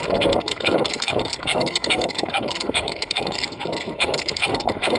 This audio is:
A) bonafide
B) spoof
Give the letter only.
B